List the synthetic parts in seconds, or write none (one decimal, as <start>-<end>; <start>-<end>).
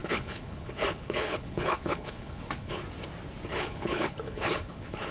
0.0-2.8; 3.5-5.1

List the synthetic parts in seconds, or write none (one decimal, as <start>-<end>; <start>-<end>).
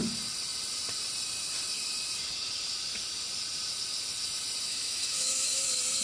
4.7-5.6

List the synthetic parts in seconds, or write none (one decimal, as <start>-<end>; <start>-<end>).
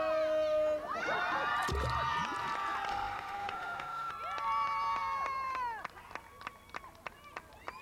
2.9-4.1